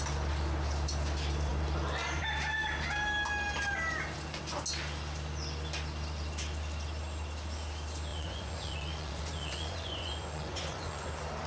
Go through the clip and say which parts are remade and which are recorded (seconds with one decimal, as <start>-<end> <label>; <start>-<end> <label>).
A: 0.0-8.1 recorded; 8.1-11.1 remade; 11.1-11.5 recorded